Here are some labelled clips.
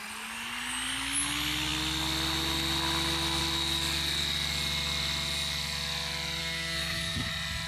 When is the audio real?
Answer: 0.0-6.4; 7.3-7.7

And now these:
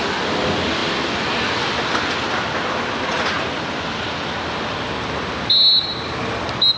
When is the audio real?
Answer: 0.0-6.8

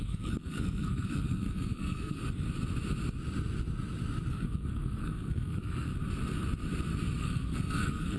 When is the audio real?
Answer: 2.2-4.3; 5.9-7.2